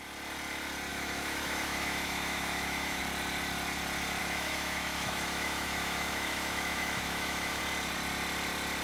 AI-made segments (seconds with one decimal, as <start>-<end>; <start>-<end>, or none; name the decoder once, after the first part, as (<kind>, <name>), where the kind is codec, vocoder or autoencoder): 0.9-3.0 (autoencoder, DAC-VAE); 4.2-7.6